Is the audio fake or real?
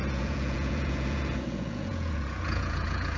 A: fake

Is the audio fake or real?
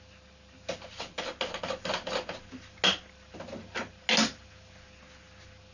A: real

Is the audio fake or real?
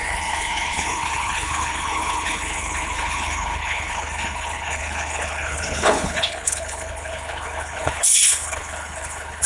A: fake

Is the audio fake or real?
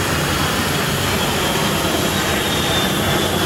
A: fake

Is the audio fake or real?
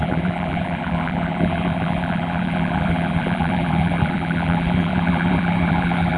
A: fake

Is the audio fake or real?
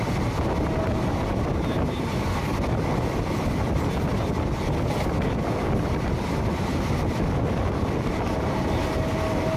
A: real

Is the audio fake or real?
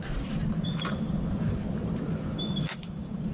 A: real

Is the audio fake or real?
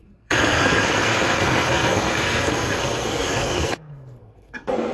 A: fake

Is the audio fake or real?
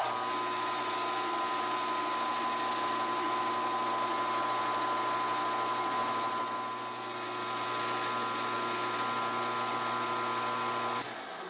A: real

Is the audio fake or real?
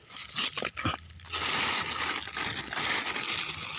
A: real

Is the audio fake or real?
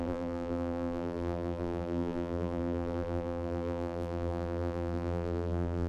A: fake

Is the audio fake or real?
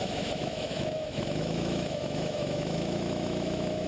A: fake